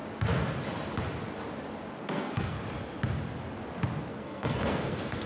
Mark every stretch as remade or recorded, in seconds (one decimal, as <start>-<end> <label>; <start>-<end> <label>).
0.0-2.0 recorded; 2.0-2.6 remade; 2.6-4.1 recorded; 4.1-5.3 remade